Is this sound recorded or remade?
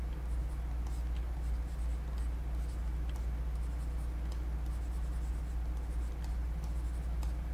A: recorded